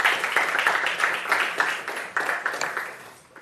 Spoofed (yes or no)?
no